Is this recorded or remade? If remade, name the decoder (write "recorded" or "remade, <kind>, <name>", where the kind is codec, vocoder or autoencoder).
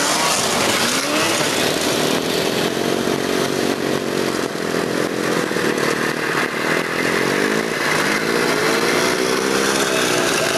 recorded